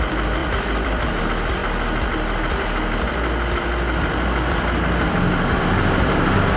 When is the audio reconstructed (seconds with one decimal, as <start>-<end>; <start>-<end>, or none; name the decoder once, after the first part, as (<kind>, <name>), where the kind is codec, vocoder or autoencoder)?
0.4-1.2 (vocoder, BigVGAN v2)